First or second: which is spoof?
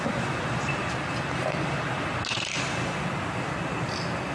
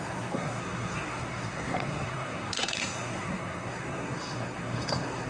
second